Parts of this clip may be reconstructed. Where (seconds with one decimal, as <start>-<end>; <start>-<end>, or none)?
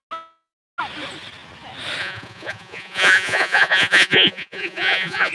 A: 2.0-5.3